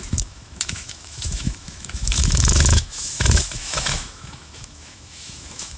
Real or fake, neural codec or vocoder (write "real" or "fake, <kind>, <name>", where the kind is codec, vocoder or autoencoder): fake, autoencoder, DAC-VAE